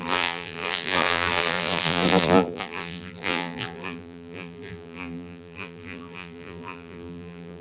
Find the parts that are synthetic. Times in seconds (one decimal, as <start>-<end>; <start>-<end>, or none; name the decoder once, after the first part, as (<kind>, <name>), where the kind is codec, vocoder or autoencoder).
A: 0.0-7.6 (vocoder, BigVGAN v2)